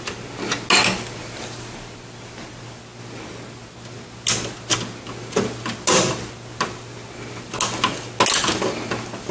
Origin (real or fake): real